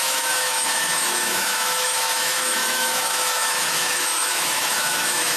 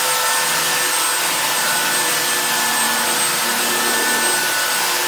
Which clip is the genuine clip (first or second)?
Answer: second